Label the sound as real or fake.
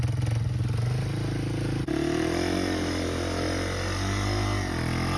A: real